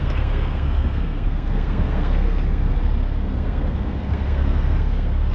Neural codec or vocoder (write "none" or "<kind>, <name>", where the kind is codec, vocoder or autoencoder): codec, SNAC